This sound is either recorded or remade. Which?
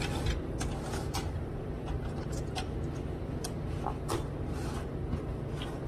remade